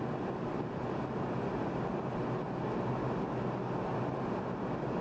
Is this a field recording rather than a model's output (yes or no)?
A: yes